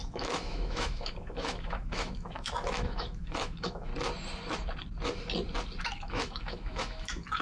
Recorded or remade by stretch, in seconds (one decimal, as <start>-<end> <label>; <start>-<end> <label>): 0.0-3.9 remade; 3.9-5.8 recorded; 5.8-7.4 remade